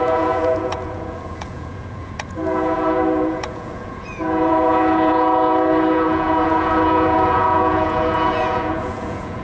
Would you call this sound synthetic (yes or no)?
yes